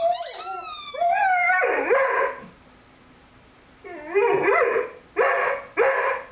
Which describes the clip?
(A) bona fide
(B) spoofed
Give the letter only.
A